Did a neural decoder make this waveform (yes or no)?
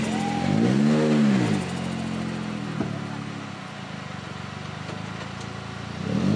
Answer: no